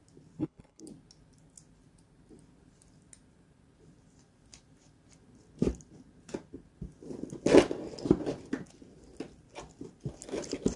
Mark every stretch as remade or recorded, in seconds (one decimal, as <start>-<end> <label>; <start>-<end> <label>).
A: 0.0-0.4 recorded; 0.4-0.9 remade; 0.9-10.8 recorded